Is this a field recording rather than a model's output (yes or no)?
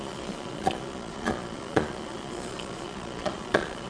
no